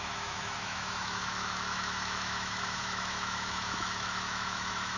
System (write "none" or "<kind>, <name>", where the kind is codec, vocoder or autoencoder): autoencoder, DAC-VAE